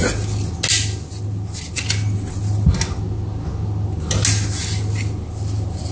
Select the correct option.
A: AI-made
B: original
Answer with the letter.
B